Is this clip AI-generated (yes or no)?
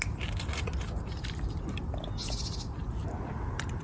no